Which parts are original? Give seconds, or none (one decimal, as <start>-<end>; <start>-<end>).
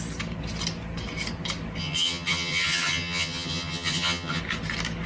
0.0-1.8; 4.4-5.1